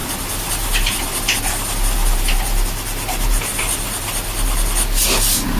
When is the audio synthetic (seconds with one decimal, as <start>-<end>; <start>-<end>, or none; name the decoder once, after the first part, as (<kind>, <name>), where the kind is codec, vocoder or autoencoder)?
none